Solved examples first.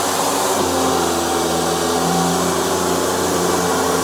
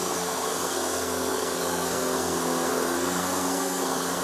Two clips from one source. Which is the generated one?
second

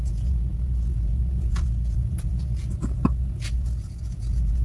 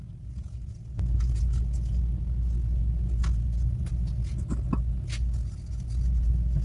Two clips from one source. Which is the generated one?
first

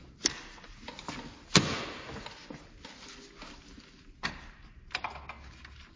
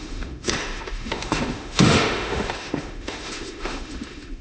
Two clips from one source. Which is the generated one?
second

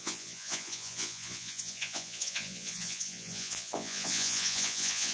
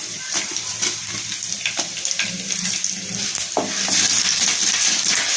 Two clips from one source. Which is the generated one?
first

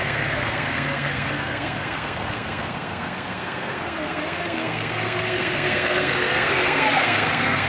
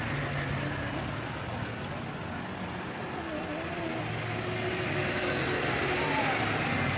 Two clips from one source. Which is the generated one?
first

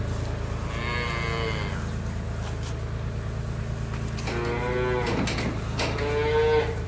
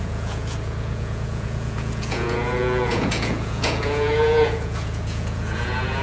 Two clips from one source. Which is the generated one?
second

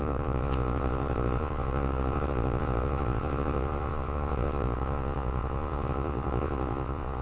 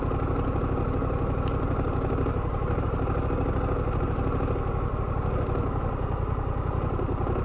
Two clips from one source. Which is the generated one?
first